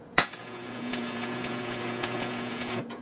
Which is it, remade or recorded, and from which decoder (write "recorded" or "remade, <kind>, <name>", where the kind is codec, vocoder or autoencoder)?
remade, vocoder, Vocos